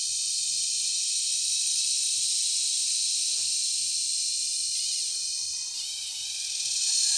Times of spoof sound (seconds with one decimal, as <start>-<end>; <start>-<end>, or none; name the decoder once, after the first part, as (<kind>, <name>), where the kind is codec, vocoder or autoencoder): 1.3-2.3 (vocoder, Vocos)